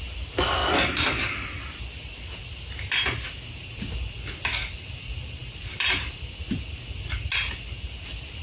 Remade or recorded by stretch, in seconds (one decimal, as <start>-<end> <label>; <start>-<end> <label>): 0.0-8.4 recorded